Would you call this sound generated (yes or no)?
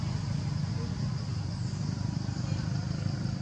no